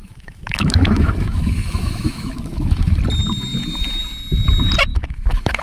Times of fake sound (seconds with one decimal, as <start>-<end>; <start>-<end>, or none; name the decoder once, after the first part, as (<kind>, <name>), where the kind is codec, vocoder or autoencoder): 0.0-3.0 (autoencoder, DAC-VAE); 4.9-5.6